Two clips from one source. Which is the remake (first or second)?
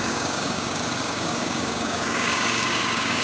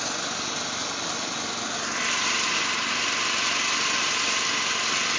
first